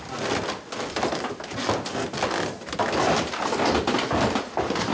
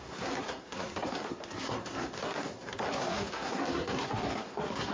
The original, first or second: first